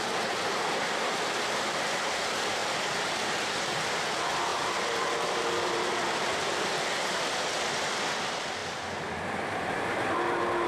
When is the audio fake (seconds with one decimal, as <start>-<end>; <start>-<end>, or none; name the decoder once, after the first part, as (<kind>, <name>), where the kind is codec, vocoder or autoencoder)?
2.6-3.1 (vocoder, BigVGAN v2); 4.5-7.9